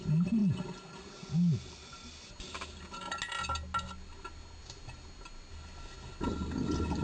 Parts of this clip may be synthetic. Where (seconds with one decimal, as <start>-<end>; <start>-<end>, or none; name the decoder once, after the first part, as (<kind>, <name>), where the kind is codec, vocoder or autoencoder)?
none

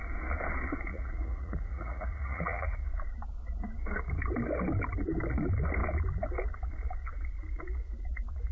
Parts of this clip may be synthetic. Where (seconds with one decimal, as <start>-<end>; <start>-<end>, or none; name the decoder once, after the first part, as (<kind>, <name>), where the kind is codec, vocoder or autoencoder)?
0.9-2.8 (vocoder, Vocos)

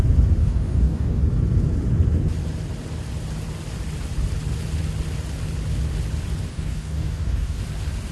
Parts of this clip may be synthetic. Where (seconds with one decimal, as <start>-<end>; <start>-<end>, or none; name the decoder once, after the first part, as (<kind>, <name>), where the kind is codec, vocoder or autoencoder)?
0.4-1.2 (codec, DAC); 6.5-7.6

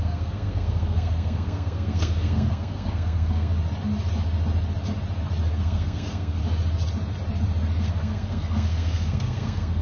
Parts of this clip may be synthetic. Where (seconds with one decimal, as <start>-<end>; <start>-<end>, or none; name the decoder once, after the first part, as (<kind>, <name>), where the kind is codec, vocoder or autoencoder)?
0.0-3.5 (codec, SNAC); 5.5-6.4; 7.8-9.8

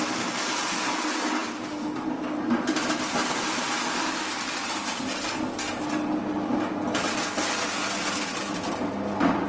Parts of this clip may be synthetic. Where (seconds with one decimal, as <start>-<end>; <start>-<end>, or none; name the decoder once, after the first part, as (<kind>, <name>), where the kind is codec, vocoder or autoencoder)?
none